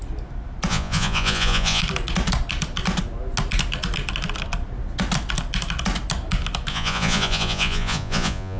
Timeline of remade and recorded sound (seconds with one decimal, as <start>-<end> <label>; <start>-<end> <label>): 0.0-0.7 recorded; 0.7-1.8 remade; 1.8-6.7 recorded; 6.7-8.6 remade